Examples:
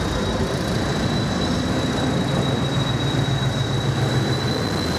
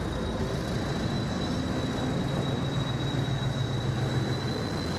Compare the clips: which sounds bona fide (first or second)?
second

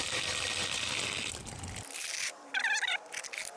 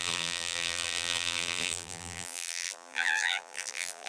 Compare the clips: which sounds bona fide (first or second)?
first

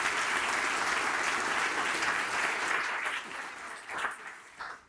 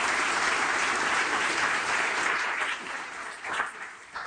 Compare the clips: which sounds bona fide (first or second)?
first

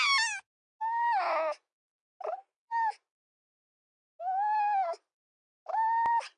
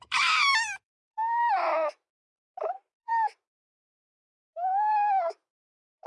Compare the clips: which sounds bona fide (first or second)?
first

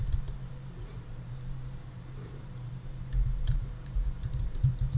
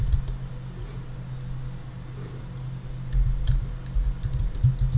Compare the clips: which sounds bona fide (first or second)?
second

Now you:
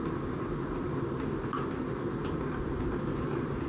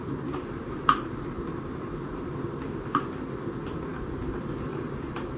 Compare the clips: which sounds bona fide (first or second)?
first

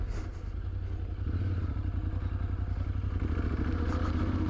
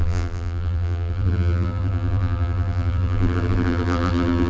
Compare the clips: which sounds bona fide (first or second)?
first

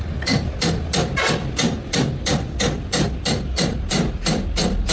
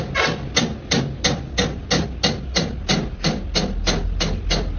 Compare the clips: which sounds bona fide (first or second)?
second